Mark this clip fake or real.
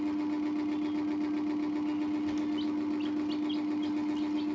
real